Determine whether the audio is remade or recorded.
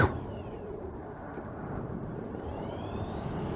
remade